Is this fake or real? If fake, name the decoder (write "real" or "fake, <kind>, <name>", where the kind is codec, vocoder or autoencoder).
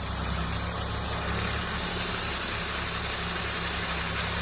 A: fake, vocoder, BigVGAN v2